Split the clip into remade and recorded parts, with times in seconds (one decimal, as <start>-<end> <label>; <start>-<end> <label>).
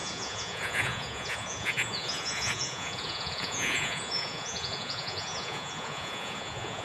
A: 0.0-6.8 remade